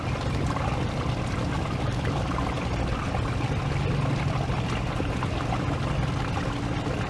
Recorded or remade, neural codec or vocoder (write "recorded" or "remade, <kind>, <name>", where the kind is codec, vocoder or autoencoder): recorded